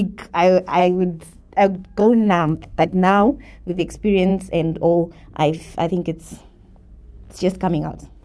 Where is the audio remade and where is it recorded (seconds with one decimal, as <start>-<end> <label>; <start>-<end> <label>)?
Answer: 0.0-0.8 recorded; 0.8-1.5 remade; 1.5-2.0 recorded; 2.0-3.8 remade; 3.8-8.2 recorded